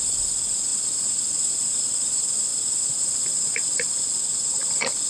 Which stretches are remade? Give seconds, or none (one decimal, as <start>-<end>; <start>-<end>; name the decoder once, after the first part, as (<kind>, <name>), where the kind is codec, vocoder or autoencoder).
0.0-2.5 (vocoder, BigVGAN v2); 3.0-5.1

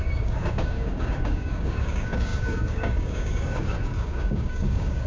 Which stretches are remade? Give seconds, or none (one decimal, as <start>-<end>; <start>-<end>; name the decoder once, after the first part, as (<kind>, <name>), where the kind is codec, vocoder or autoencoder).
0.0-5.1 (codec, DAC)

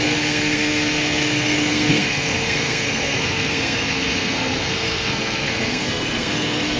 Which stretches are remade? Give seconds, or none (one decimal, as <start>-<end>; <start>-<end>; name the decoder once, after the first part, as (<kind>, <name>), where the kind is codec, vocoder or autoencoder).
0.0-6.8 (codec, SNAC)

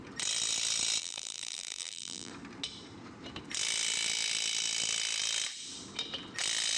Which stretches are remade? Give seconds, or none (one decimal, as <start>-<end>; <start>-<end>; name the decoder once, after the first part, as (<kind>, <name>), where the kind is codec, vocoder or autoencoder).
1.0-2.3 (vocoder, BigVGAN v2)

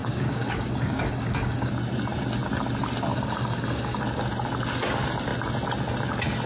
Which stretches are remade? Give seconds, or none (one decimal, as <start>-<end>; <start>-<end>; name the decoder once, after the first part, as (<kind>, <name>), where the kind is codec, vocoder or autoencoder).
0.0-1.7 (codec, DAC); 3.1-4.0